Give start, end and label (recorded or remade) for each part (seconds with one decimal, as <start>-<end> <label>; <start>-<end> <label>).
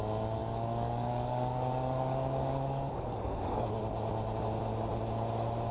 0.0-0.4 recorded; 0.4-3.8 remade; 3.8-5.7 recorded